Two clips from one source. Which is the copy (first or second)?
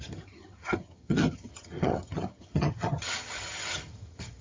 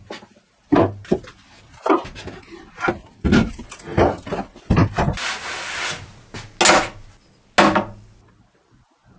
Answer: first